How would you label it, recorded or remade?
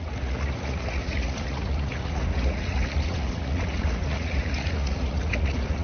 remade